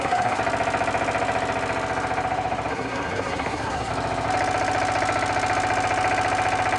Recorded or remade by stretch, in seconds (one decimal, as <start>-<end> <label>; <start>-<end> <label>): 0.0-0.4 remade; 0.4-2.7 recorded; 2.7-3.9 remade; 3.9-6.8 recorded